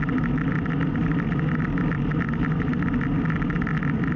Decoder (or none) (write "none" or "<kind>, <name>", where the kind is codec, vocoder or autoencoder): none